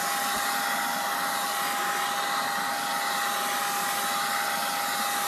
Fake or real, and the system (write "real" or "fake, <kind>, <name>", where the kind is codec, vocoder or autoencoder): real